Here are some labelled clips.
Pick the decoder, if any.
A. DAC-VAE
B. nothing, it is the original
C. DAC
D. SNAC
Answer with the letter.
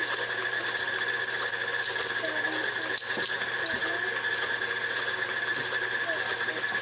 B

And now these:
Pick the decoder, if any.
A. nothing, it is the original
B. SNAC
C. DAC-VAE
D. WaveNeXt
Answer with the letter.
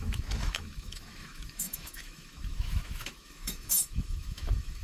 C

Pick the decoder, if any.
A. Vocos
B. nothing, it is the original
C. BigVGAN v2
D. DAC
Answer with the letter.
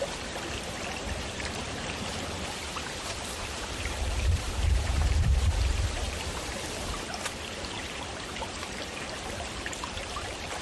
C